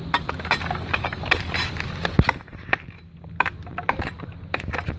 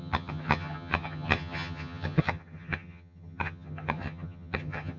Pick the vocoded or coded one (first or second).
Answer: second